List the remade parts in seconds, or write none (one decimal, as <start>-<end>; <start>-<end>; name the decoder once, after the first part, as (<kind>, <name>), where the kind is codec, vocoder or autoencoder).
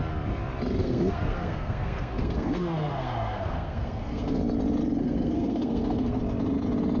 0.8-4.4 (codec, SNAC); 5.0-6.2